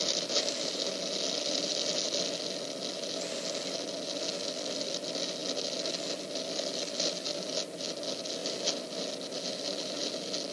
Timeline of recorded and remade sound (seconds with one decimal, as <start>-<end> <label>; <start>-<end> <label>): 0.0-10.5 recorded